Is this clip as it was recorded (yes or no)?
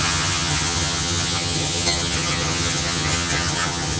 no